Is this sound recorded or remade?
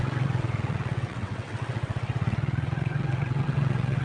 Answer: remade